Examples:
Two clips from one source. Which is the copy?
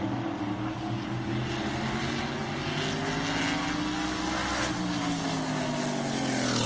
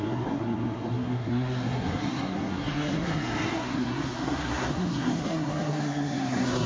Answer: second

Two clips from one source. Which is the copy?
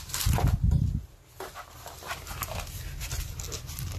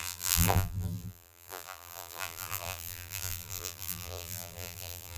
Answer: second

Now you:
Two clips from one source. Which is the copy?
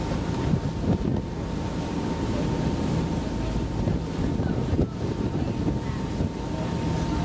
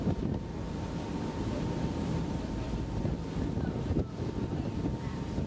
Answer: second